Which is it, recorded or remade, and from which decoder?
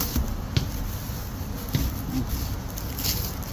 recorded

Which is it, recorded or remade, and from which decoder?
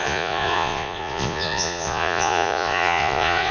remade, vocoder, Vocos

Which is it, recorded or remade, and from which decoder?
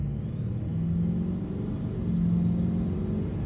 recorded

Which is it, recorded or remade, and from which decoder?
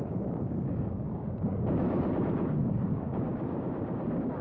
remade, codec, DAC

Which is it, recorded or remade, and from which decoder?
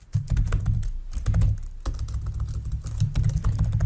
recorded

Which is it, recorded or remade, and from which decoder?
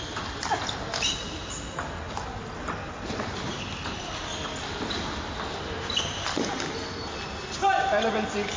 recorded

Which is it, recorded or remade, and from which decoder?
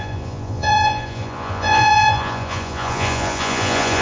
remade, vocoder, Vocos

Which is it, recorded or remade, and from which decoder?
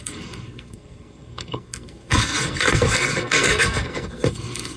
remade, codec, SNAC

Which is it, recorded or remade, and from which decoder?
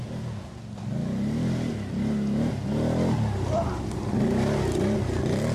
recorded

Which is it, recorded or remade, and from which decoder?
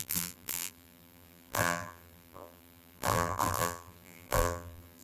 remade, vocoder, BigVGAN v2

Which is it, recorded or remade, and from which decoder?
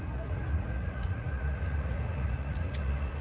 remade, vocoder, Vocos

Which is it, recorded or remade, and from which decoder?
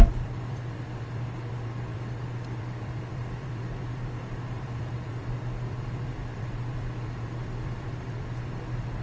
remade, vocoder, BigVGAN v2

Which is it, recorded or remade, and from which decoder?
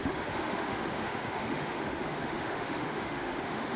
remade, autoencoder, DAC-VAE